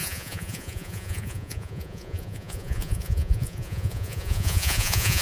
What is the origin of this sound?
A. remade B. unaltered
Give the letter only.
A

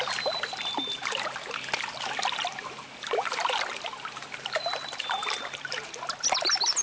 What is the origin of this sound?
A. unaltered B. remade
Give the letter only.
A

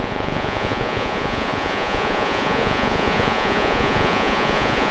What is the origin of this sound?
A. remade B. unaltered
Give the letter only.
A